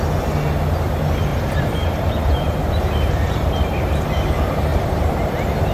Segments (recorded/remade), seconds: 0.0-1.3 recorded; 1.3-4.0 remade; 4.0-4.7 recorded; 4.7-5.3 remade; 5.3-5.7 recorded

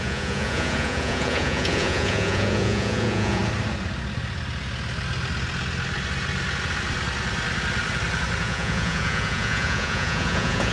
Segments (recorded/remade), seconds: 0.0-3.4 remade; 3.4-8.4 recorded; 8.4-10.7 remade

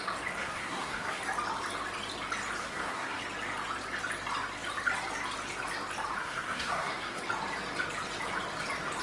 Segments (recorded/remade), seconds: 0.0-0.4 recorded; 0.4-1.2 remade; 1.2-2.6 recorded; 2.6-3.2 remade; 3.2-6.2 recorded; 6.2-7.2 remade; 7.2-9.0 recorded